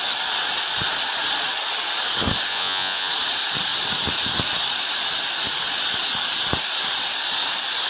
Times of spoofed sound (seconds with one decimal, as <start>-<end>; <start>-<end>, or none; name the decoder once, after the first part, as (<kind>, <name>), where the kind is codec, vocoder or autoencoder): 2.5-3.1 (vocoder, Vocos)